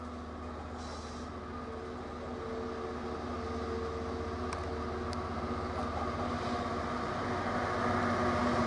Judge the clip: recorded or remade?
recorded